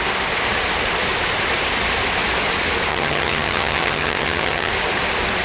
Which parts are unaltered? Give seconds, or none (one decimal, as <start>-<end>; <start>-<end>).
0.0-2.9; 4.7-5.4